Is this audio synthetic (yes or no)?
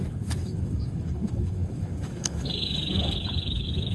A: yes